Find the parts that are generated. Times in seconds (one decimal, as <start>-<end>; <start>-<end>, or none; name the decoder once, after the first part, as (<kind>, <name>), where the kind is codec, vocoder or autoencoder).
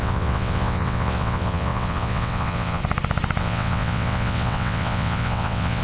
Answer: 0.0-2.8 (vocoder, WaveNeXt); 3.4-5.8